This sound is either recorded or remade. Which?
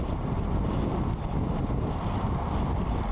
recorded